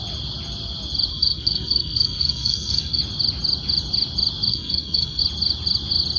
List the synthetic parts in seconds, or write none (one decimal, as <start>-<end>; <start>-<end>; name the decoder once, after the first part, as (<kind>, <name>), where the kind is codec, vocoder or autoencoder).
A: 1.1-3.0 (codec, SNAC); 4.5-5.2